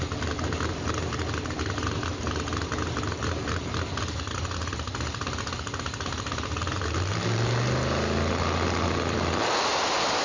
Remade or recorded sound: recorded